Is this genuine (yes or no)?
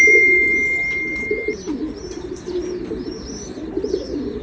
no